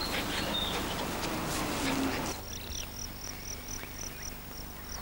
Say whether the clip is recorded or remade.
recorded